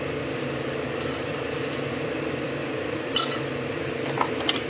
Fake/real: fake